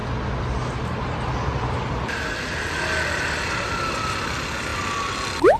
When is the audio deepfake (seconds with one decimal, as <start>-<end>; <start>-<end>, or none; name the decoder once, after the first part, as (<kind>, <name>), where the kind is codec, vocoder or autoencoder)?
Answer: none